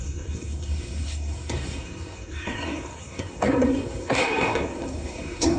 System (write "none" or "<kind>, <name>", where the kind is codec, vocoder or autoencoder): codec, SNAC